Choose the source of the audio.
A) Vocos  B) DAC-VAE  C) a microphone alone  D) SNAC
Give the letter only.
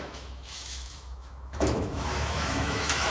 B